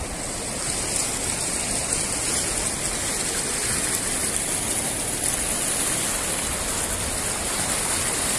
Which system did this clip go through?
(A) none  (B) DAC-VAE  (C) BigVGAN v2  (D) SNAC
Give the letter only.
A